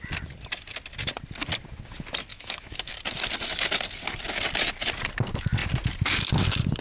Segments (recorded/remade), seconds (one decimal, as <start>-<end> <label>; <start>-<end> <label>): 0.0-2.3 recorded; 2.3-2.9 remade; 2.9-6.8 recorded